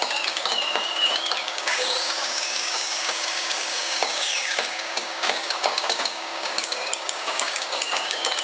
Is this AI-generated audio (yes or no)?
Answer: yes